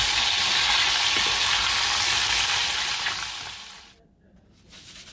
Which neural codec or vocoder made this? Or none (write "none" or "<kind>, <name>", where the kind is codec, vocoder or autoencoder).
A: none